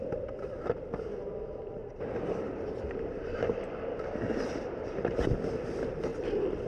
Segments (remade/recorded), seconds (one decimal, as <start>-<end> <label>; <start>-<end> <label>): 0.0-1.8 recorded; 1.8-3.6 remade; 3.6-6.7 recorded